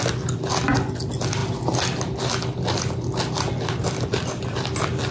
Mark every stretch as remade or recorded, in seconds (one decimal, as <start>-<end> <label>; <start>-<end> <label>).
0.0-5.1 recorded